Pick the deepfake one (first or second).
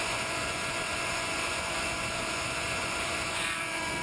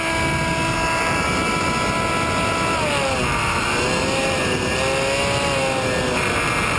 first